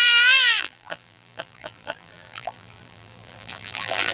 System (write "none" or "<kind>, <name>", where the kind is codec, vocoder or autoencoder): vocoder, BigVGAN v2